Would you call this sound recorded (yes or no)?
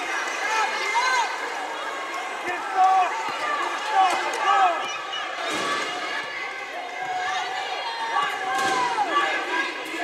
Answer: no